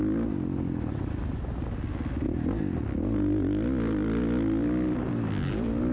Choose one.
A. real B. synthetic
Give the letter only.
A